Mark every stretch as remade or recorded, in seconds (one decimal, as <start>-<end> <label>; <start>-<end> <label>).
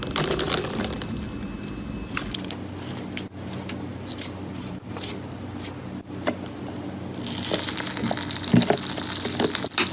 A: 0.0-3.9 recorded; 3.9-5.1 remade; 5.1-9.9 recorded